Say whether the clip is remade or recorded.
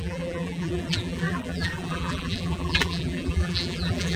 remade